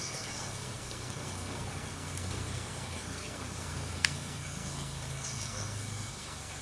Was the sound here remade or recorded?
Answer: remade